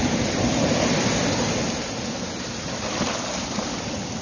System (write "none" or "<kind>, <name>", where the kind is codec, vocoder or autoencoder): none